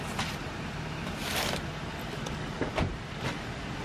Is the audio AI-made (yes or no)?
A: no